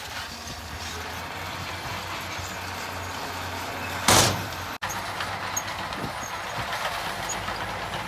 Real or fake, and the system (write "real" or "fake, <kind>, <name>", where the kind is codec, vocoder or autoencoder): real